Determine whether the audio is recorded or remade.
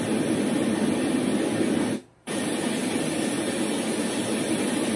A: recorded